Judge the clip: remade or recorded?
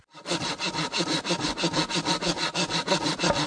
recorded